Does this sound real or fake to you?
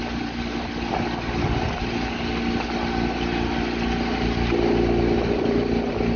real